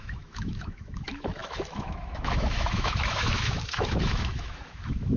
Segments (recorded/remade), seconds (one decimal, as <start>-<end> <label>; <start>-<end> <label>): 0.0-5.2 remade